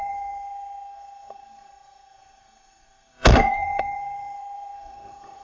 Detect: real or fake fake